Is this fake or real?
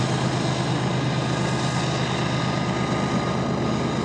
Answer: real